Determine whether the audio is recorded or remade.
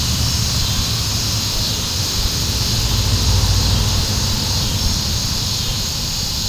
remade